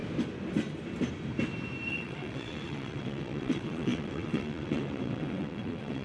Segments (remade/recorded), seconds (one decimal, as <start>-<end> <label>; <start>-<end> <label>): 0.0-1.9 recorded; 1.9-6.0 remade